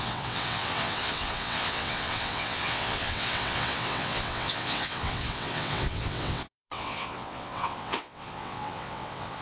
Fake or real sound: fake